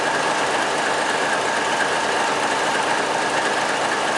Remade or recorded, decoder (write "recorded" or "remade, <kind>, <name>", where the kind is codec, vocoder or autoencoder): recorded